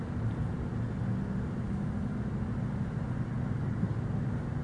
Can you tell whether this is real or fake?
real